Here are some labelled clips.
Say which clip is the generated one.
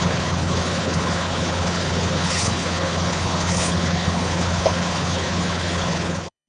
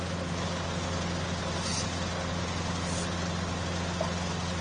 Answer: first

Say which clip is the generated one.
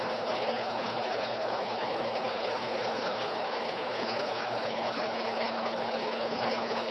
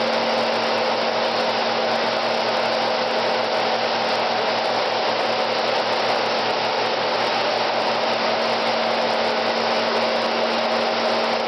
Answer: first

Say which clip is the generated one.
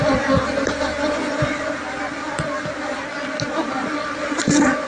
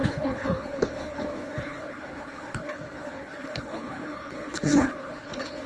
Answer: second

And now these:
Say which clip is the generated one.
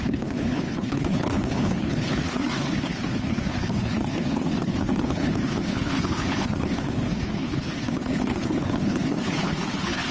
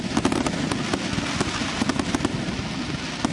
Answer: first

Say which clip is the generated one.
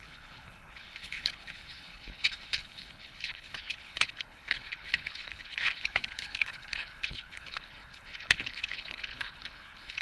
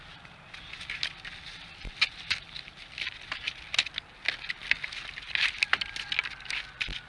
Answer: first